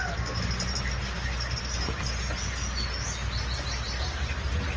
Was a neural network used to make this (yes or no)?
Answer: no